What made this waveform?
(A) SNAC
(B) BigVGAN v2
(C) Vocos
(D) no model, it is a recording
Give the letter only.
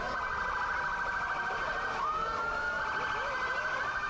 D